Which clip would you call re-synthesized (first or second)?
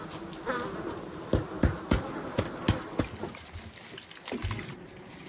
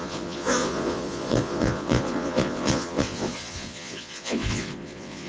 second